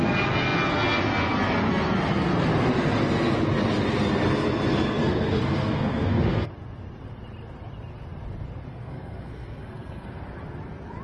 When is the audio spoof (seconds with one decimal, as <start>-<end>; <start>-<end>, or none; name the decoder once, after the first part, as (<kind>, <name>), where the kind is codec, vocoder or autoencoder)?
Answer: 5.0-6.5 (codec, SNAC); 8.7-10.1